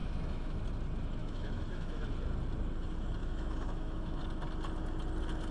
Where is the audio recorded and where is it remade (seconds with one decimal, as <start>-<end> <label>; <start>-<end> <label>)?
0.0-0.6 remade; 0.6-1.2 recorded; 1.2-2.0 remade; 2.0-3.2 recorded; 3.2-4.2 remade; 4.2-5.5 recorded